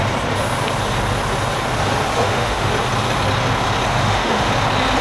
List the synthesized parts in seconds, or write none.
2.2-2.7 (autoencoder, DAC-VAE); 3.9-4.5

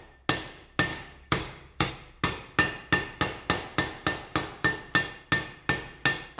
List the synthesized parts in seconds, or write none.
0.9-1.9 (codec, DAC)

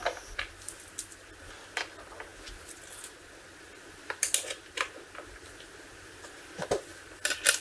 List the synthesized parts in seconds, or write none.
none